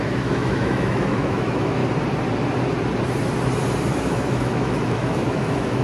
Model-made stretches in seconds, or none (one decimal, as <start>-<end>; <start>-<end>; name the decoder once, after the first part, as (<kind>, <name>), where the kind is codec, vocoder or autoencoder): 0.0-1.8 (autoencoder, DAC-VAE); 3.9-5.8